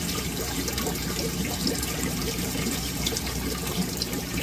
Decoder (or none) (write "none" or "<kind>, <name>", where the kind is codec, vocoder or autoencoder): vocoder, BigVGAN v2